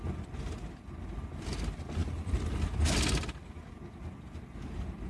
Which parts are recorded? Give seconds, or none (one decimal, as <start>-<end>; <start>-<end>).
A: 0.0-5.1